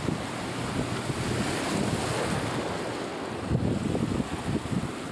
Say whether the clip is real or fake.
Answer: real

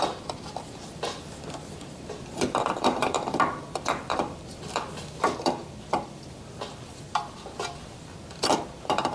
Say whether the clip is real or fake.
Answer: fake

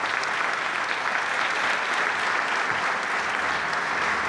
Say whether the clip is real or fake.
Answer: real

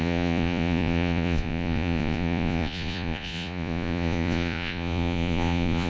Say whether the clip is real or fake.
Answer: fake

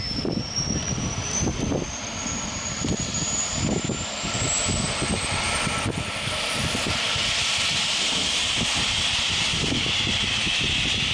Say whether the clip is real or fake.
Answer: fake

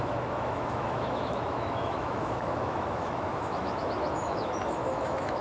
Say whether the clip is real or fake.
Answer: fake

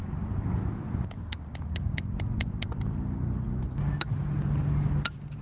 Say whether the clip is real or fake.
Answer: real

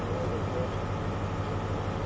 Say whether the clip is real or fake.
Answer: real